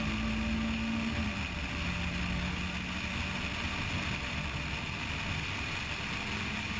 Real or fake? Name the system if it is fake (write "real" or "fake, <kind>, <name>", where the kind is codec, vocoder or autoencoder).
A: real